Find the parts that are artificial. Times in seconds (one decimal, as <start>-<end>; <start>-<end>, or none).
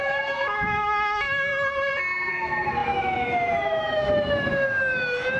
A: 0.0-1.5; 2.3-5.4